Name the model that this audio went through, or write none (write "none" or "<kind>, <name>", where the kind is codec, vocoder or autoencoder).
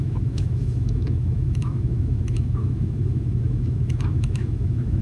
autoencoder, DAC-VAE